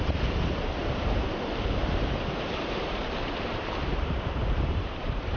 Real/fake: fake